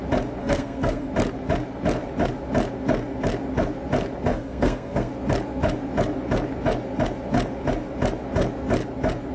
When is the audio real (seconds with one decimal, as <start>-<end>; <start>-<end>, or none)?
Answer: 0.0-0.4; 1.1-4.3; 5.1-9.3